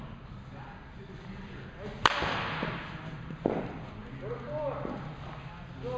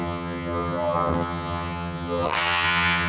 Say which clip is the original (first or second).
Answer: first